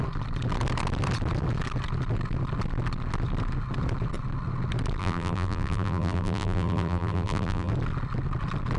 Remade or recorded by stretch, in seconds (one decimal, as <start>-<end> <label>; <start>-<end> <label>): 0.0-5.0 recorded; 5.0-7.7 remade; 7.7-8.8 recorded